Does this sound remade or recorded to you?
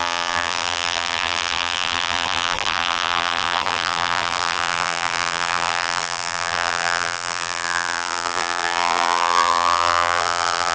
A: remade